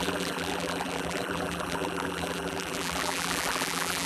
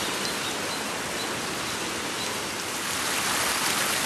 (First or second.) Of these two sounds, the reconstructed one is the first